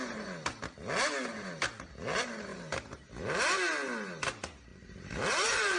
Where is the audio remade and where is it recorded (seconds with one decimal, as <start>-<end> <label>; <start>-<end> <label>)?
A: 0.0-2.5 recorded; 2.5-3.1 remade; 3.1-4.7 recorded; 4.7-5.8 remade